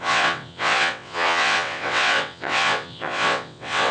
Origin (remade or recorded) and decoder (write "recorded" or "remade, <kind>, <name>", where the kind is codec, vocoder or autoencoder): remade, vocoder, WaveNeXt